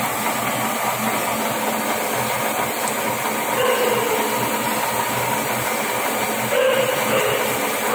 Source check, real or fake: real